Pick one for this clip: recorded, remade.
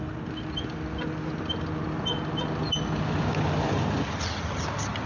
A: recorded